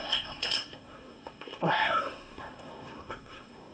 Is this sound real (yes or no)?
no